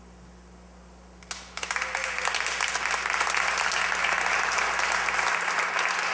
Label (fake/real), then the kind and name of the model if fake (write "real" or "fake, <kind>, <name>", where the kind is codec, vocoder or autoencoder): real